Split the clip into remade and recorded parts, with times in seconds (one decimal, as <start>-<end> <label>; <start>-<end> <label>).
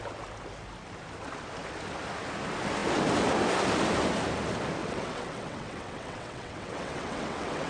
0.0-4.8 recorded; 4.8-7.7 remade